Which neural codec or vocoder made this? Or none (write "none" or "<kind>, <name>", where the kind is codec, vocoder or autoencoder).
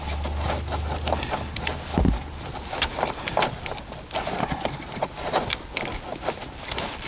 none